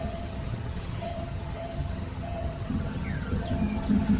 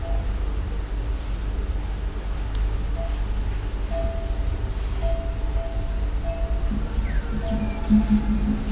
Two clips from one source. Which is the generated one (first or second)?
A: first